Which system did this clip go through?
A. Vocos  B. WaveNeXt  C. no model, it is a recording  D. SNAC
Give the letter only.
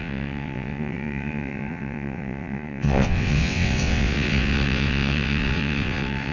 B